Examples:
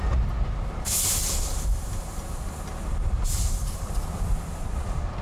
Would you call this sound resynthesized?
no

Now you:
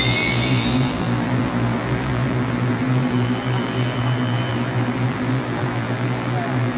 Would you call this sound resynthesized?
yes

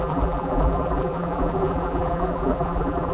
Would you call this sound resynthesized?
yes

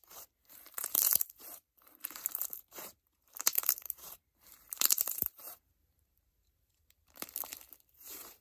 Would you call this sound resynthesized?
yes